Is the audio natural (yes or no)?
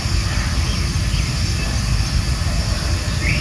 yes